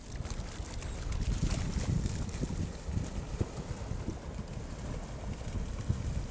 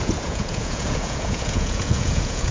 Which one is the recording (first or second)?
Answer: first